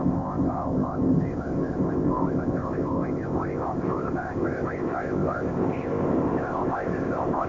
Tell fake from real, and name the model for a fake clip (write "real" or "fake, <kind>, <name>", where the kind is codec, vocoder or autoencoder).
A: fake, codec, ZipCodec